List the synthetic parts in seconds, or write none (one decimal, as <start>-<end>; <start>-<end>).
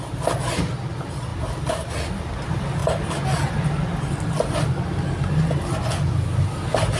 none